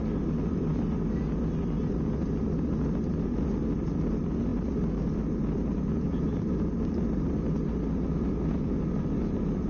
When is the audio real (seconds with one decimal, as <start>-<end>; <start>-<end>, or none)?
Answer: 0.0-9.7